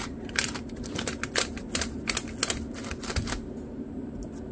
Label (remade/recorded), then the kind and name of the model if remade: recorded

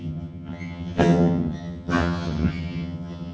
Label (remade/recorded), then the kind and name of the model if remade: remade, vocoder, HiFi-GAN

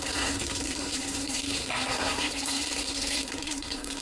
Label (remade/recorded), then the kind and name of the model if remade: remade, codec, SNAC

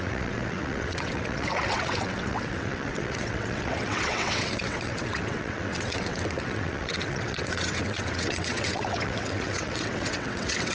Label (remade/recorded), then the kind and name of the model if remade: remade, vocoder, WaveNeXt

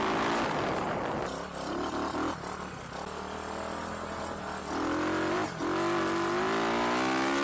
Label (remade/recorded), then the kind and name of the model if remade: recorded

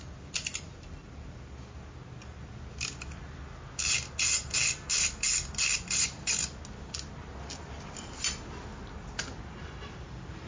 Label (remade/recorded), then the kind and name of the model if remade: recorded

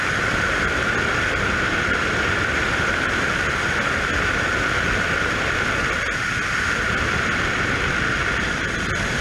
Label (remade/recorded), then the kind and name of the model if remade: remade, vocoder, BigVGAN v2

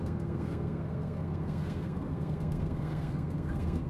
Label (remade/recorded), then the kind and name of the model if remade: remade, codec, SNAC